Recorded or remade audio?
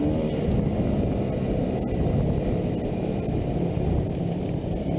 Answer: recorded